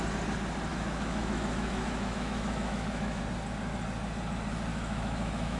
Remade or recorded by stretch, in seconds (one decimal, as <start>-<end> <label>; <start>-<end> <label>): 0.0-0.7 recorded; 0.7-3.2 remade; 3.2-4.7 recorded; 4.7-5.6 remade

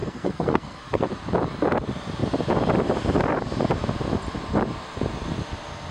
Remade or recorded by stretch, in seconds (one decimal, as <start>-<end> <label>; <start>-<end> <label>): 0.0-1.1 remade; 1.1-5.9 recorded

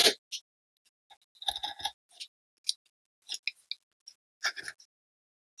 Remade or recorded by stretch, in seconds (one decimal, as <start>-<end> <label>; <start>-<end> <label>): 0.0-5.6 recorded

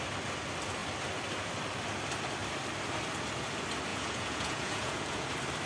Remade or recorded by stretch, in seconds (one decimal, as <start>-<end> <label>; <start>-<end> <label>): 0.0-3.9 recorded; 3.9-5.3 remade; 5.3-5.7 recorded

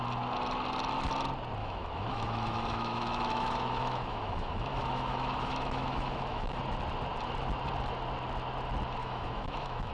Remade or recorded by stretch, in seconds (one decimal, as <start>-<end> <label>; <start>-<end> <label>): 0.0-1.6 recorded; 1.6-6.6 remade; 6.6-9.0 recorded; 9.0-9.9 remade

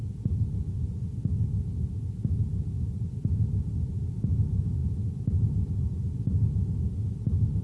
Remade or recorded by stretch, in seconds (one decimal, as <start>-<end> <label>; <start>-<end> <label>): 0.0-7.6 recorded

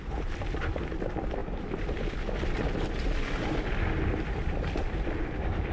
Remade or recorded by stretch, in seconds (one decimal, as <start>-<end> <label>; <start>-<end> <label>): 0.0-5.7 remade